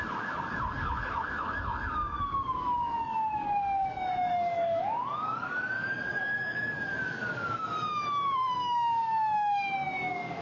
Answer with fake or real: fake